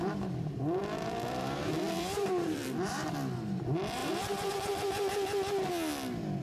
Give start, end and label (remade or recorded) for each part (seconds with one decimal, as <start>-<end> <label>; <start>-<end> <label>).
0.0-0.8 recorded; 0.8-2.9 remade; 2.9-4.0 recorded; 4.0-4.5 remade; 4.5-6.4 recorded

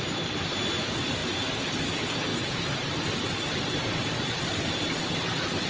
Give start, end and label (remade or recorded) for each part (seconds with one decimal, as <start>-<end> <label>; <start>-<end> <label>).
0.0-1.2 recorded; 1.2-1.8 remade; 1.8-5.7 recorded